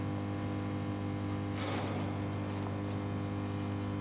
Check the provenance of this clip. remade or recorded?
recorded